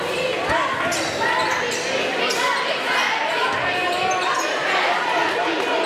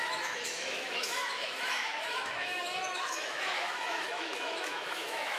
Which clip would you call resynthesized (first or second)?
second